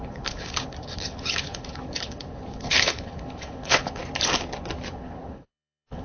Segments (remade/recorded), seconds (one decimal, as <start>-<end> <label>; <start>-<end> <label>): 0.0-4.0 remade; 4.0-4.9 recorded; 4.9-6.0 remade